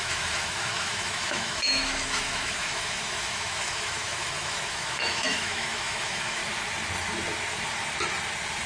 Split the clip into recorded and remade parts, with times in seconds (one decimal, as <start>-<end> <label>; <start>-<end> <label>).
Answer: 0.0-6.4 remade; 6.4-8.7 recorded